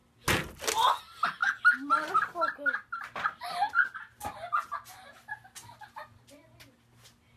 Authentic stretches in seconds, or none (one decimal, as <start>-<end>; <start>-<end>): 0.0-7.4